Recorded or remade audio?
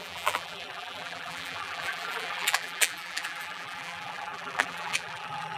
remade